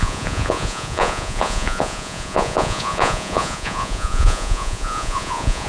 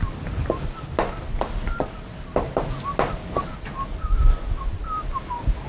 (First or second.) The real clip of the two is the second